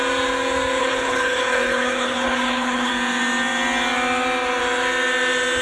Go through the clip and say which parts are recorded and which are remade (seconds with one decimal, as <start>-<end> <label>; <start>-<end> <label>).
0.0-0.8 recorded; 0.8-2.9 remade; 2.9-5.6 recorded